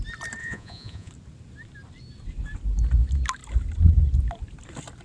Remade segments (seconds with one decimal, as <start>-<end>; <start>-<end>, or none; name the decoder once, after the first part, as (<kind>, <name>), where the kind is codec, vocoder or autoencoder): 0.4-1.1 (vocoder, Vocos)